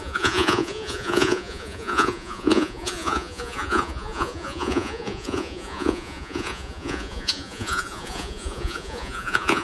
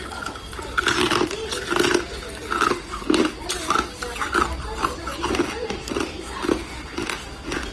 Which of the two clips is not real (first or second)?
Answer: first